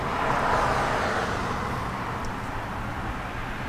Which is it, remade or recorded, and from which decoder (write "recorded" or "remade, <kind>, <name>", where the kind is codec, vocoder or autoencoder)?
recorded